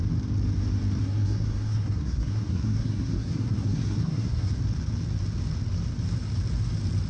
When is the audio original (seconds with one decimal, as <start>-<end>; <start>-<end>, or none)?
0.0-1.0; 4.5-7.1